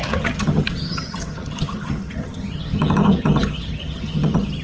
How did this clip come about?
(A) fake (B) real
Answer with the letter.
A